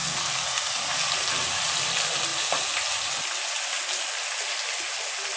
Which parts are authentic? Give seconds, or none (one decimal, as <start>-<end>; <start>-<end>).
0.7-5.4